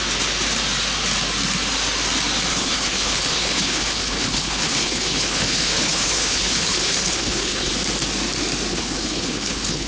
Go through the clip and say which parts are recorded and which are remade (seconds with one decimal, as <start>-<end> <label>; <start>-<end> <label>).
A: 0.0-2.5 recorded; 2.5-7.7 remade; 7.7-8.7 recorded; 8.7-9.9 remade